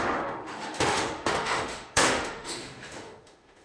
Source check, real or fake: fake